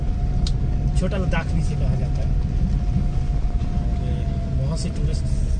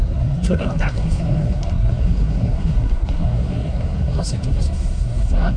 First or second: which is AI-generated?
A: second